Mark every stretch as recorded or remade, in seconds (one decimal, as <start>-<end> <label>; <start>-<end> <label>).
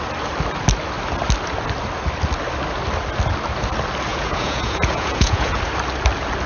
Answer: 0.0-4.1 recorded; 4.1-5.6 remade; 5.6-6.5 recorded